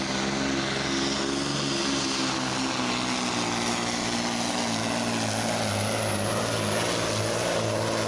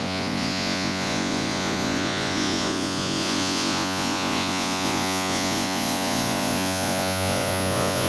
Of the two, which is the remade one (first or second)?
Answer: second